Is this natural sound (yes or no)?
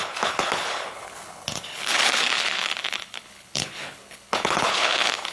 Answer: no